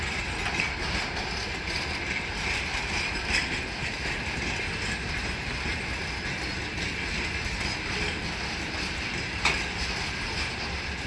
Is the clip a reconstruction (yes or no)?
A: no